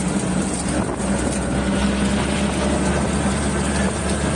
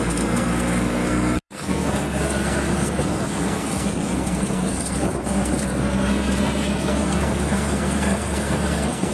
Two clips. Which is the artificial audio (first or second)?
second